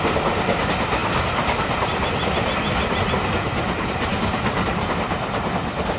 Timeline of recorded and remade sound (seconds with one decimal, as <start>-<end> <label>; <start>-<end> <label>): 0.0-6.0 recorded